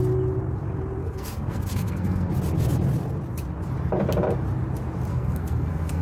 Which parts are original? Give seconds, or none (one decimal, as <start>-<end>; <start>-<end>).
0.0-1.0; 2.3-5.1

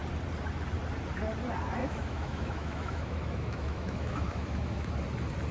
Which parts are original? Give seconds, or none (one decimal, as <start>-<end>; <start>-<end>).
0.0-1.8; 4.9-5.5

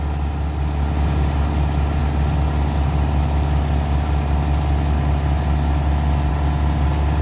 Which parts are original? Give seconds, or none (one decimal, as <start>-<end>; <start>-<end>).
0.0-7.2

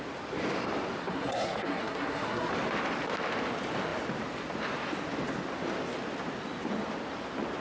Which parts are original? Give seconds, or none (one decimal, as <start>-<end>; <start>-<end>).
0.0-1.0; 2.5-7.6

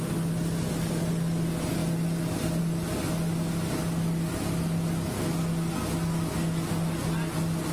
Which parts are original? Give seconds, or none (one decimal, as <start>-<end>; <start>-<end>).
0.0-7.7

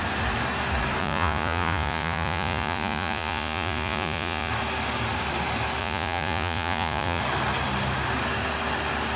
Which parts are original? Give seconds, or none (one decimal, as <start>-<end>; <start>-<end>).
0.0-1.0; 4.5-5.8; 7.2-9.2

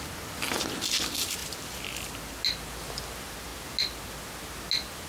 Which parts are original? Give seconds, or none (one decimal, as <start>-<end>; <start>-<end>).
0.0-1.4; 2.3-5.1